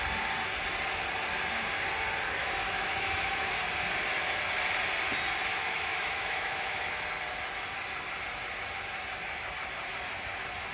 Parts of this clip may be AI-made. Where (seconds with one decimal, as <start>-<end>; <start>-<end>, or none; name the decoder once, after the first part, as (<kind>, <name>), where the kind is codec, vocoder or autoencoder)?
2.4-3.6 (autoencoder, DAC-VAE); 5.5-7.0